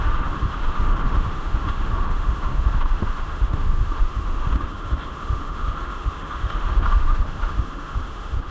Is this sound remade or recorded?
remade